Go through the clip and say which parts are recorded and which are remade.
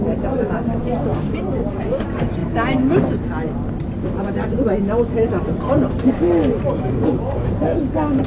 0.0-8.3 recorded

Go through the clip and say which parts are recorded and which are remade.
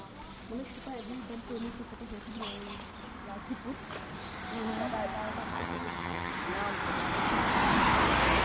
0.0-5.5 recorded; 5.5-6.3 remade; 6.3-8.4 recorded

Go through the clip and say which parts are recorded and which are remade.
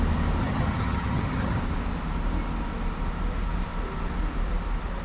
0.0-0.4 recorded; 0.4-1.6 remade; 1.6-5.0 recorded